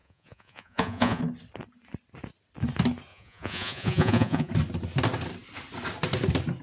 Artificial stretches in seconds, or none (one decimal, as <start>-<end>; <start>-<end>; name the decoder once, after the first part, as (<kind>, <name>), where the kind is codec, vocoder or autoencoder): 0.0-1.2 (vocoder, Vocos); 3.1-4.5